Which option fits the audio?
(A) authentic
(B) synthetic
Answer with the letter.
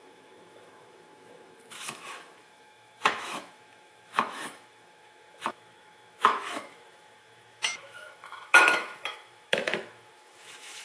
B